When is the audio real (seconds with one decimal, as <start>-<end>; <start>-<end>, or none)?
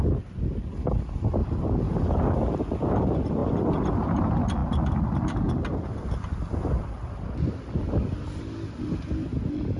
0.0-1.4; 2.0-3.4; 4.0-4.6; 8.8-9.8